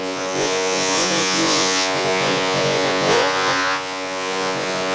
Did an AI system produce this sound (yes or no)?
yes